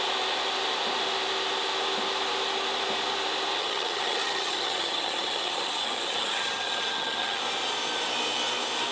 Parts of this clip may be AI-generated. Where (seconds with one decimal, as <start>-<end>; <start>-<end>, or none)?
3.6-7.4